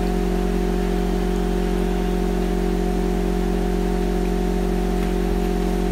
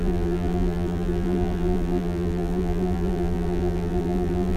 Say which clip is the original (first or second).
first